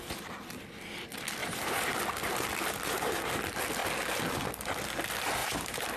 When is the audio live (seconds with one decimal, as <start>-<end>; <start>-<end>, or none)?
0.0-1.4; 2.0-5.4